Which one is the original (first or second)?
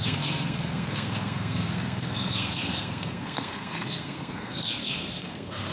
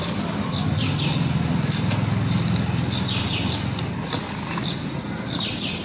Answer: second